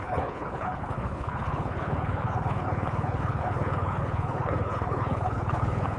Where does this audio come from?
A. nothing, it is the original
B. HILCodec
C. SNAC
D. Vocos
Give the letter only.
B